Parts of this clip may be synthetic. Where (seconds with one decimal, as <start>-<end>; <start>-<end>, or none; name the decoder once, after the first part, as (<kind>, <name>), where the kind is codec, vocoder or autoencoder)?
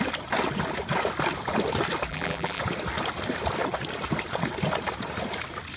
2.1-2.6 (vocoder, BigVGAN v2)